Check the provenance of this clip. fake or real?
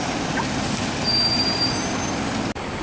real